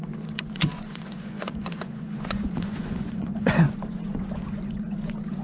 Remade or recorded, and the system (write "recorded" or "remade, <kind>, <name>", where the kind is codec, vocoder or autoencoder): remade, vocoder, Vocos